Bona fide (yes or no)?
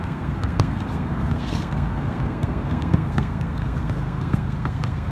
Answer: no